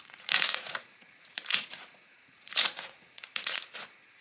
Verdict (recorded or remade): remade